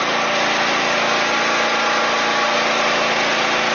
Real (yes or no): yes